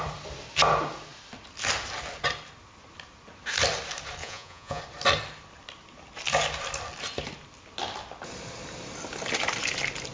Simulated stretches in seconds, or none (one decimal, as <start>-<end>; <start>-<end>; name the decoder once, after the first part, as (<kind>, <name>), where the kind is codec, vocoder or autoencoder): 4.2-4.8 (vocoder, Vocos)